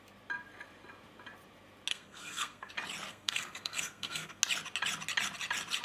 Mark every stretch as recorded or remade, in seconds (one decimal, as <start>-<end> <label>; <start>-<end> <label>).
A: 0.0-1.9 recorded; 1.9-2.7 remade; 2.7-3.1 recorded; 3.1-4.4 remade; 4.4-5.8 recorded

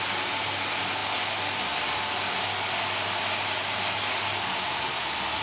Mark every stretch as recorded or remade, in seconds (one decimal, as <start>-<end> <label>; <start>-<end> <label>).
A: 0.0-5.4 recorded

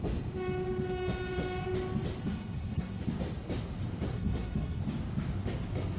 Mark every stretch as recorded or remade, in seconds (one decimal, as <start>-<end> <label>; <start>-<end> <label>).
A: 0.0-2.2 recorded; 2.2-3.0 remade; 3.0-4.1 recorded; 4.1-4.8 remade; 4.8-6.0 recorded

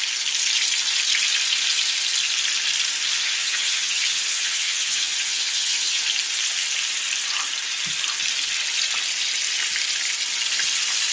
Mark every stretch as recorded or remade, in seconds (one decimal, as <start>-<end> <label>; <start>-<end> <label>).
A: 0.0-3.2 recorded; 3.2-6.0 remade; 6.0-11.1 recorded

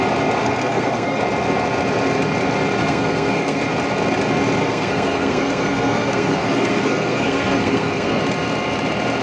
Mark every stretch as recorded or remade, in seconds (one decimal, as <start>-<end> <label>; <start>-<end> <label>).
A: 0.0-0.4 recorded; 0.4-1.2 remade; 1.2-2.8 recorded; 2.8-3.6 remade; 3.6-4.6 recorded; 4.6-8.2 remade; 8.2-9.2 recorded

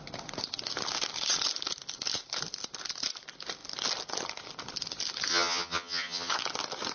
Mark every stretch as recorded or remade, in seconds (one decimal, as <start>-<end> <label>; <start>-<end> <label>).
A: 0.0-5.3 recorded; 5.3-6.3 remade; 6.3-6.9 recorded